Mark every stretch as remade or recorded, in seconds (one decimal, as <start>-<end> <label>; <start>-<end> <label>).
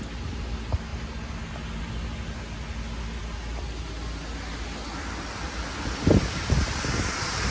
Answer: 0.0-7.5 recorded